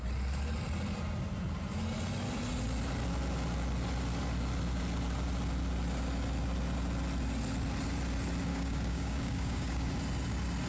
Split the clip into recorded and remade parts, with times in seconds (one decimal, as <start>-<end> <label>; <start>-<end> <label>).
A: 0.0-8.5 recorded; 8.5-9.9 remade; 9.9-10.7 recorded